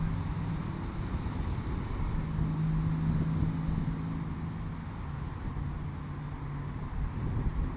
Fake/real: real